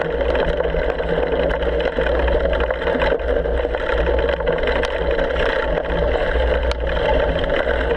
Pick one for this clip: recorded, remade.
recorded